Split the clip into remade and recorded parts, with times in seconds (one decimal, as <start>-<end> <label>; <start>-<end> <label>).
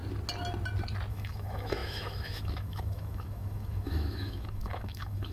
0.0-1.1 recorded; 1.1-5.3 remade